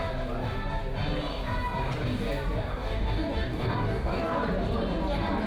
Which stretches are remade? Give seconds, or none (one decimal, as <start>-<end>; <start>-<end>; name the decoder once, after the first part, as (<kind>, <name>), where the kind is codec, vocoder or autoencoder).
2.7-4.4 (codec, DAC)